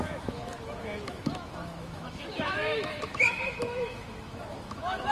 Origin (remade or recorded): remade